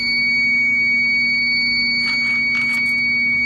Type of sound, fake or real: real